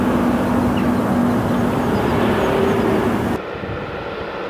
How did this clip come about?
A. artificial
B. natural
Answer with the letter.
B